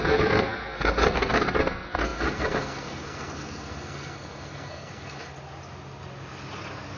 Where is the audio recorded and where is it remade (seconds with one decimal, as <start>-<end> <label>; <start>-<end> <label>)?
0.0-5.3 remade; 5.3-7.0 recorded